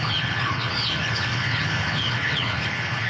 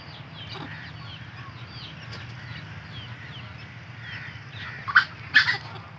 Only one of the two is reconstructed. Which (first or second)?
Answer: first